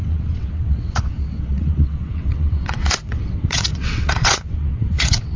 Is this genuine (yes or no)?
no